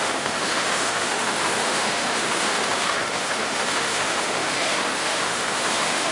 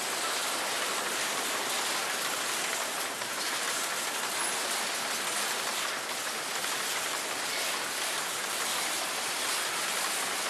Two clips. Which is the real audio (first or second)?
second